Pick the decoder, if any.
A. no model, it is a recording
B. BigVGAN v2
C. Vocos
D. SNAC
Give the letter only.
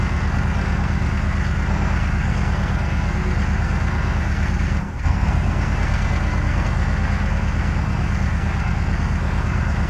D